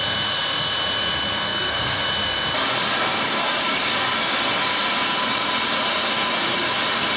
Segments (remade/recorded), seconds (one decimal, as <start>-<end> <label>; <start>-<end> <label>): 0.0-1.5 recorded; 1.5-2.0 remade; 2.0-2.9 recorded; 2.9-4.5 remade; 4.5-7.2 recorded